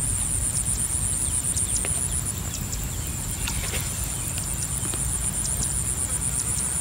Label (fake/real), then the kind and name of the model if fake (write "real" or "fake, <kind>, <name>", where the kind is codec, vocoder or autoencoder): real